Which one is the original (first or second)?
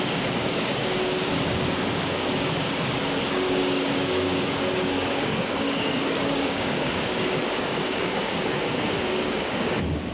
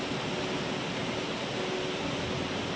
second